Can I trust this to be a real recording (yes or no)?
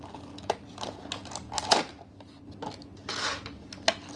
yes